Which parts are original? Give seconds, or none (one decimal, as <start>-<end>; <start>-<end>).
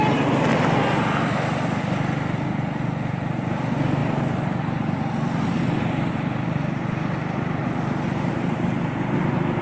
7.6-8.5